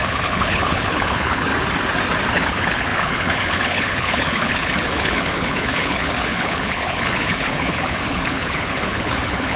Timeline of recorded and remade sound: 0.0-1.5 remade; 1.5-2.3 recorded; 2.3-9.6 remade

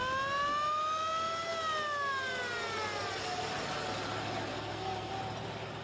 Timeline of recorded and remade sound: 0.0-4.5 recorded; 4.5-5.1 remade; 5.1-5.8 recorded

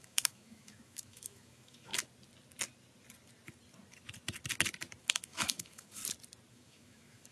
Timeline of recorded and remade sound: 0.0-1.9 remade; 1.9-5.0 recorded; 5.0-6.0 remade; 6.0-6.5 recorded; 6.5-7.3 remade

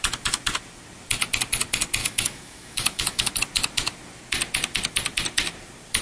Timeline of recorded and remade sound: 0.0-2.0 recorded; 2.0-3.3 remade; 3.3-6.0 recorded

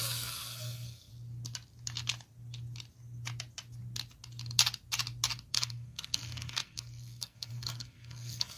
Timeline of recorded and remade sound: 0.0-1.1 remade; 1.1-5.5 recorded; 5.5-8.6 remade

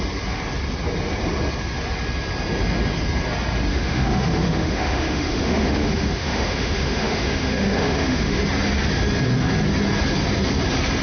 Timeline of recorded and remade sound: 0.0-3.7 recorded; 3.7-8.4 remade; 8.4-11.0 recorded

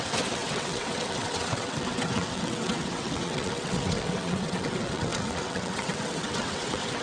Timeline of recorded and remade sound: 0.0-7.0 remade

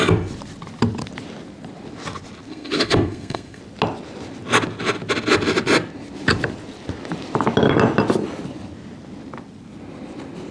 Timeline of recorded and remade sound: 0.0-2.5 recorded; 2.5-3.6 remade; 3.6-10.5 recorded